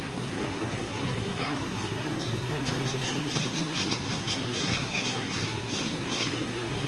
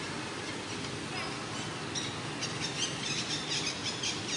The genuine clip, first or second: second